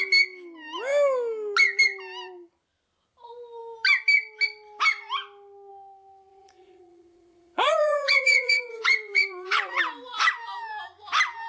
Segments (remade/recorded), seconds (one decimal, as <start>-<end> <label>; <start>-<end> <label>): 0.0-6.3 recorded; 6.3-9.8 remade; 9.8-11.5 recorded